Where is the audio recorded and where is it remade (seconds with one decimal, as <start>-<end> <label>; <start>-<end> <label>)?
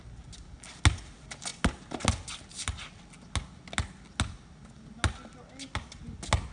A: 0.0-6.5 recorded